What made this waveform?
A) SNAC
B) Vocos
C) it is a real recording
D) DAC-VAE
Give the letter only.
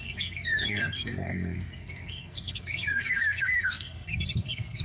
A